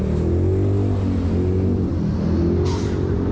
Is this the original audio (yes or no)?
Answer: yes